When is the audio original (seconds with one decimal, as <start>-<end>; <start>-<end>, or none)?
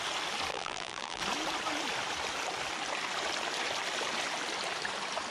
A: 0.0-0.5; 1.2-5.3